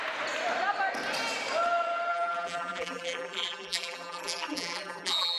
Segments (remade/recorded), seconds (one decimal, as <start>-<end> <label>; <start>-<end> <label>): 0.0-2.1 recorded; 2.1-5.4 remade